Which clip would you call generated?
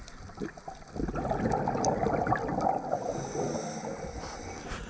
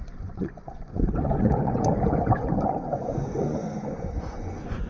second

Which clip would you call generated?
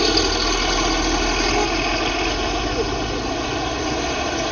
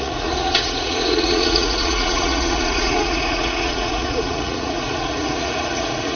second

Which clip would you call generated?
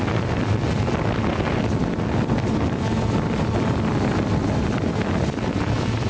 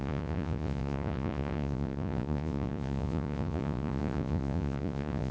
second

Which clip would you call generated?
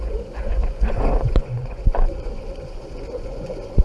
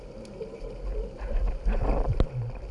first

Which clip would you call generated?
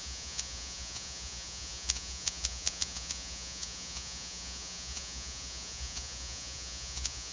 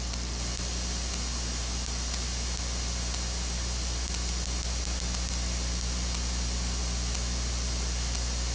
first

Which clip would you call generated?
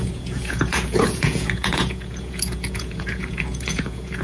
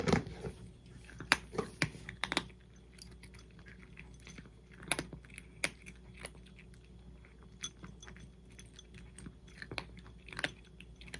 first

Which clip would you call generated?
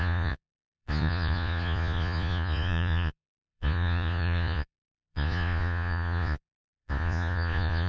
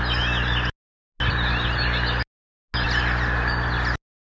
first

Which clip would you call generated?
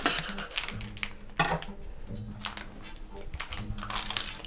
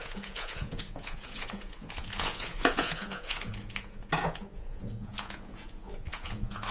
second